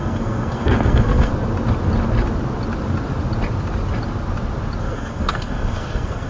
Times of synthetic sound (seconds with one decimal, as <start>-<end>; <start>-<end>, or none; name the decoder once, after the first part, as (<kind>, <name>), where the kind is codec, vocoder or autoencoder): 0.0-1.3 (codec, SNAC); 4.8-6.3